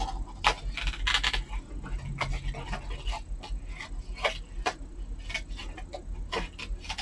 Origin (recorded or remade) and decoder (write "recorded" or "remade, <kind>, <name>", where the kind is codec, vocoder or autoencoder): recorded